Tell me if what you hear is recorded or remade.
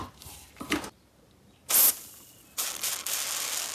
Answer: recorded